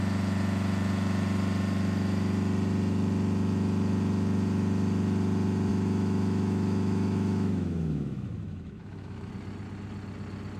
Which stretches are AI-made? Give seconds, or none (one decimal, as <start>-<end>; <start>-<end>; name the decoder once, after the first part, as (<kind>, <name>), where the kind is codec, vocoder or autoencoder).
5.7-9.3 (autoencoder, DAC-VAE)